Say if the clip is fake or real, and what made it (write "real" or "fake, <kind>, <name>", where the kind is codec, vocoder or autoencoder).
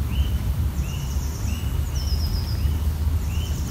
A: real